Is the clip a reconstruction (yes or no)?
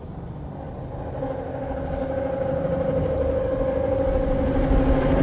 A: no